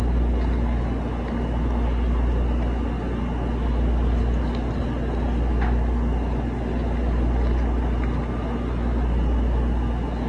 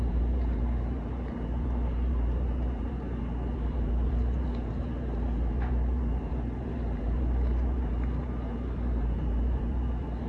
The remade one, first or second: second